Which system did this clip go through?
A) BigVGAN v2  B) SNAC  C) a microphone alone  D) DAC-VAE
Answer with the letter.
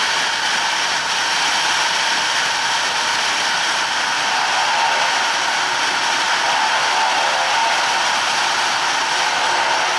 C